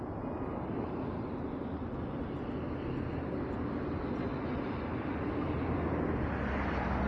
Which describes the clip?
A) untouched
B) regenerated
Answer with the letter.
A